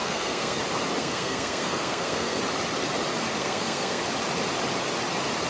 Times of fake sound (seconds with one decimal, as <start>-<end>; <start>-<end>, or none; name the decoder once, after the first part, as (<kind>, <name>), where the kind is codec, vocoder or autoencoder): 0.0-0.6 (codec, SNAC); 1.0-2.4; 3.4-4.0